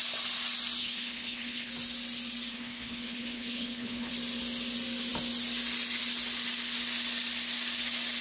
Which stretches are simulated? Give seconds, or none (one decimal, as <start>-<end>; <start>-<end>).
0.8-1.7; 2.5-4.1